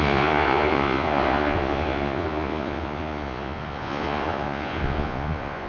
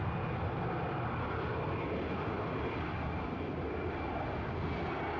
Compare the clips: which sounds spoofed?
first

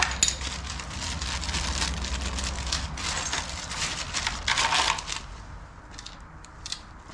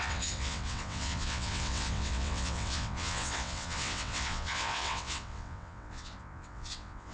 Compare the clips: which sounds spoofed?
second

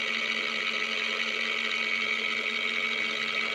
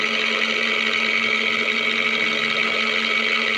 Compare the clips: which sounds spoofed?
second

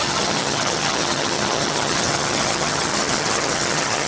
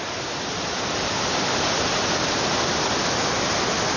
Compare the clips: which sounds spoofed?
first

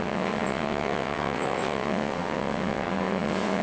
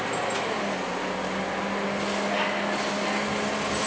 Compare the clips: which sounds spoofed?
first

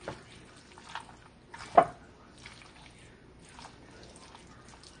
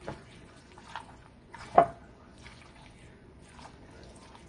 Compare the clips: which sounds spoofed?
second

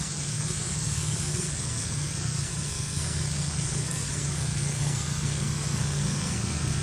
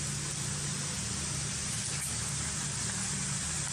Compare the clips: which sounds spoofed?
first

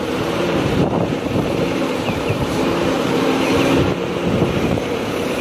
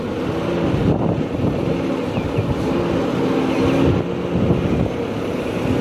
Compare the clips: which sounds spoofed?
first